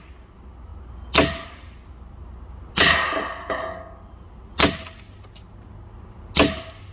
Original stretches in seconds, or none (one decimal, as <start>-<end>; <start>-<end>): 0.0-4.5; 5.0-6.9